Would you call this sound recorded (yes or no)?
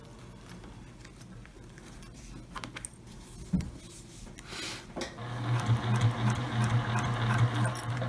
yes